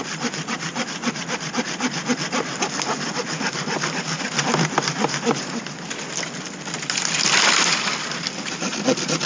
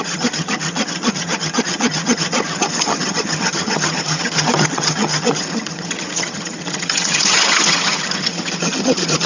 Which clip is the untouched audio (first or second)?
first